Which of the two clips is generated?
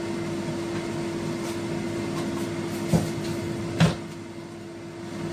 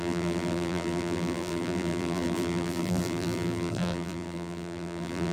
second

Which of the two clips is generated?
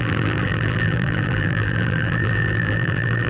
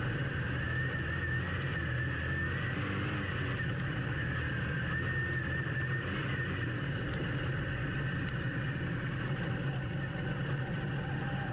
first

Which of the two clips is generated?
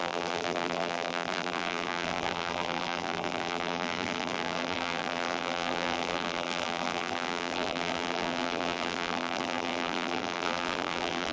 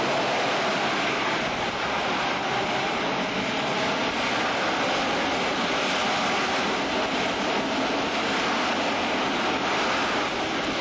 first